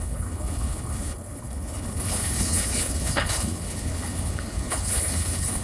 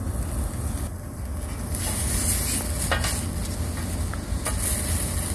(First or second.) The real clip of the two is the second